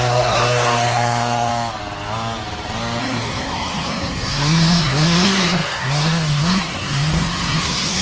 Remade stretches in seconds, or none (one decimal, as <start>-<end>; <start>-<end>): 0.0-1.5; 3.0-8.0